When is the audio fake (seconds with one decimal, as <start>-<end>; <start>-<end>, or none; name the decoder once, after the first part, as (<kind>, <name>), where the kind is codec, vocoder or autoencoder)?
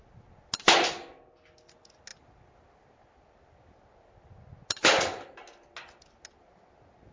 none